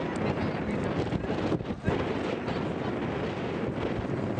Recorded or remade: recorded